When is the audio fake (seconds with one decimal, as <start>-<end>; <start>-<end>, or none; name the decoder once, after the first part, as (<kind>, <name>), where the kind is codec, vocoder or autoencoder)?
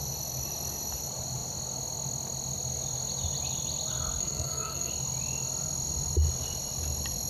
4.2-4.9 (codec, SNAC)